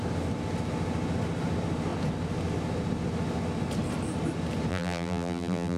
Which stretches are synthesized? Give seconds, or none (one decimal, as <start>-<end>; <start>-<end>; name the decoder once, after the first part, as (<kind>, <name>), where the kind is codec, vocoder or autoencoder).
4.7-5.8 (vocoder, BigVGAN v2)